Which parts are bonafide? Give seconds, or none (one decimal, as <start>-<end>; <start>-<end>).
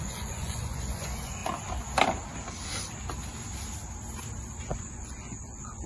1.4-4.9